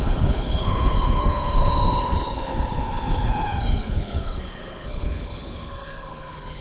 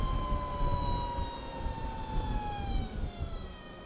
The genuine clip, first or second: second